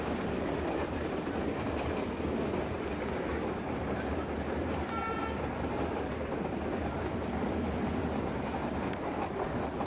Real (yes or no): yes